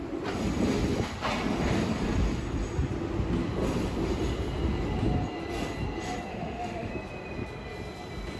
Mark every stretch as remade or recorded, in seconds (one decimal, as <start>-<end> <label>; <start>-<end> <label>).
0.0-6.3 recorded; 6.3-6.9 remade; 6.9-8.4 recorded